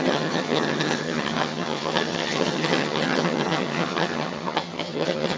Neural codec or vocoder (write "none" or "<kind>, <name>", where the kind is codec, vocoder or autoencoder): vocoder, HiFi-GAN